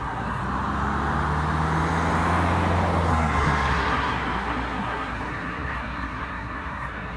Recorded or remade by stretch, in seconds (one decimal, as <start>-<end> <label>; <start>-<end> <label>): 0.0-0.4 remade; 0.4-3.1 recorded; 3.1-7.2 remade